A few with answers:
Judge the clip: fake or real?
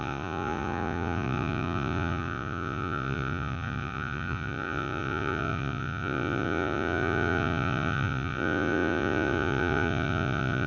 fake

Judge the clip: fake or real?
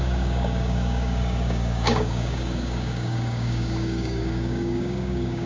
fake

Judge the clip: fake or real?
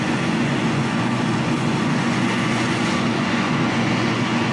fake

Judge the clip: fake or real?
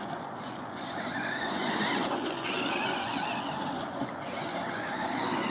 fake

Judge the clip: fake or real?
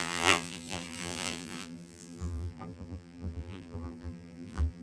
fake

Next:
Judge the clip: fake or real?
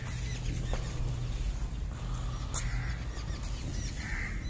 real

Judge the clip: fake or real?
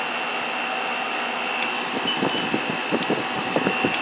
real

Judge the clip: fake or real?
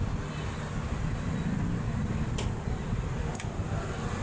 real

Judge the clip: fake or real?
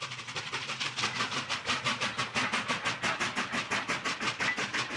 real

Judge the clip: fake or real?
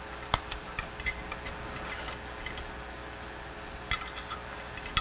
real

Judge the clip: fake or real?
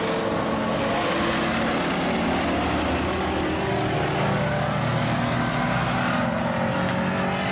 real